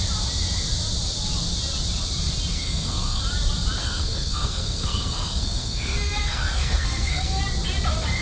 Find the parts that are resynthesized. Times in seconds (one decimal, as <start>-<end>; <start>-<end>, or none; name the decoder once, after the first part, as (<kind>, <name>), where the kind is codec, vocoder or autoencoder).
2.5-3.2 (codec, SNAC); 3.8-7.4